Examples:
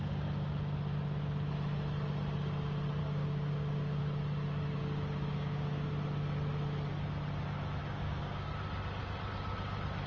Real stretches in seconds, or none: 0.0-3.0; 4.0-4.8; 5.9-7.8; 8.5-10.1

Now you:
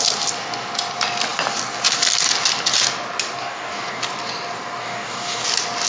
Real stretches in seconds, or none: 0.0-3.4; 4.0-4.8; 5.4-5.9

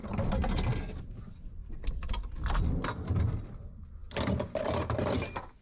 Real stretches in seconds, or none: 0.0-5.6

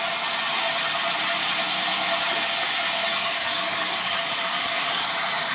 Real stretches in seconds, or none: 0.0-3.1; 5.1-5.5

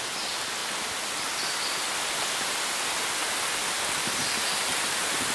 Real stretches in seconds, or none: 0.0-5.3